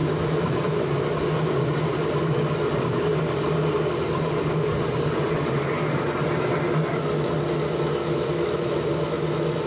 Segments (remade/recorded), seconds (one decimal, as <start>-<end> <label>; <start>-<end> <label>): 0.0-0.8 remade; 0.8-8.0 recorded; 8.0-8.8 remade; 8.8-9.7 recorded